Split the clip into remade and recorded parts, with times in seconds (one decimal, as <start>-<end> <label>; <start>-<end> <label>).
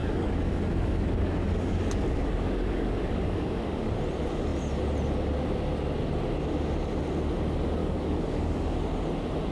0.0-3.9 remade; 3.9-7.8 recorded; 7.8-8.8 remade; 8.8-9.5 recorded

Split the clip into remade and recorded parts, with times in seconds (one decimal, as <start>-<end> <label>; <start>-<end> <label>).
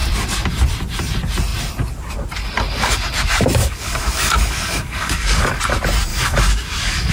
0.0-3.6 recorded; 3.6-5.6 remade; 5.6-6.1 recorded; 6.1-7.1 remade